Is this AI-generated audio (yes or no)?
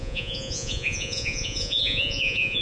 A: yes